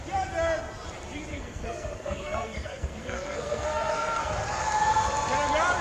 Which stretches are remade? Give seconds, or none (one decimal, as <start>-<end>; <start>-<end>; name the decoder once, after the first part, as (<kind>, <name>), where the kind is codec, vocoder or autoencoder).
1.3-4.3 (codec, SNAC)